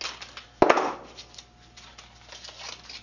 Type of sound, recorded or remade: recorded